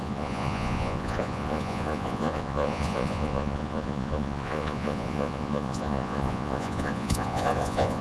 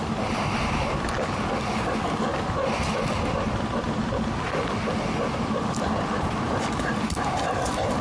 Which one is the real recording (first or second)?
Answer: second